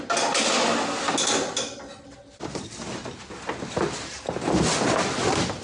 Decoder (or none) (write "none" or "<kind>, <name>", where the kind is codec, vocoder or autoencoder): none